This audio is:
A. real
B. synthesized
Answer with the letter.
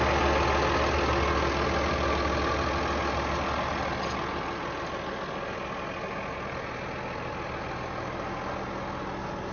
A